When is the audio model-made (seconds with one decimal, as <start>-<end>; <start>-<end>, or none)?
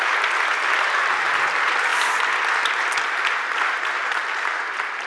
none